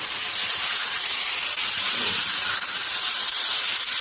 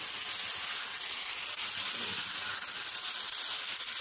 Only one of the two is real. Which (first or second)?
second